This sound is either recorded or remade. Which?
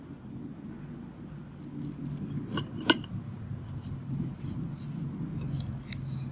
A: recorded